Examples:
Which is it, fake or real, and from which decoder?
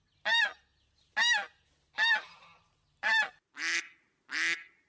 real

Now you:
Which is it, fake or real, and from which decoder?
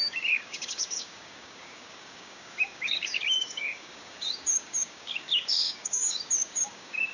fake, codec, DAC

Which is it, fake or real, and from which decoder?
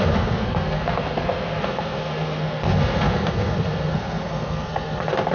fake, codec, SNAC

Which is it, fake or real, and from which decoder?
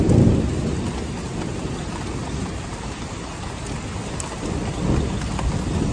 real